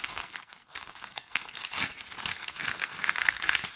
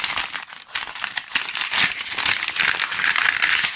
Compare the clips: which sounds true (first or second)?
second